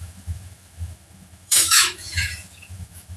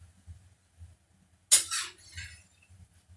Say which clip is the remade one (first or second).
first